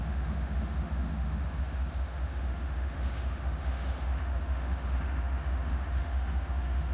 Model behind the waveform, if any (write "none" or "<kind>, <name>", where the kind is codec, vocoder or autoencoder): autoencoder, DAC-VAE